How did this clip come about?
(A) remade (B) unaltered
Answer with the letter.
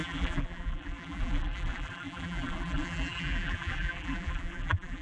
A